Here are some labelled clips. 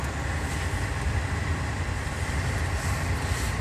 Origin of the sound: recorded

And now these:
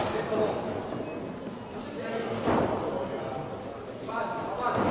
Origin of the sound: recorded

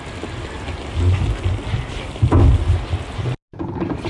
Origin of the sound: recorded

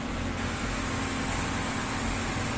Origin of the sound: recorded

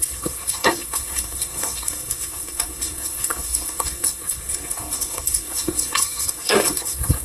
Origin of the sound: remade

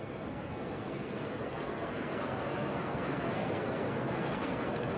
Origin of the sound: remade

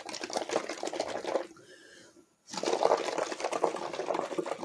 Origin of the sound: recorded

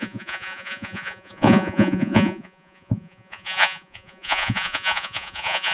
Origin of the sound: remade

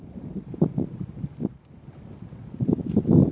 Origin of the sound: recorded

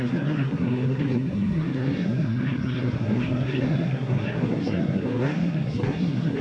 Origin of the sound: remade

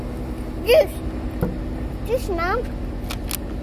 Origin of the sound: recorded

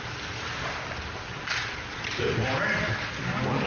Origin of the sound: recorded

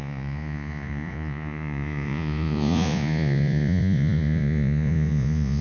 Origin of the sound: remade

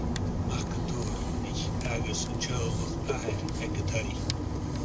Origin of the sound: recorded